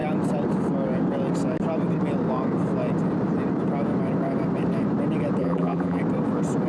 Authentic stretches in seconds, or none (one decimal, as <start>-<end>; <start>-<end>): 0.0-5.4; 6.0-6.7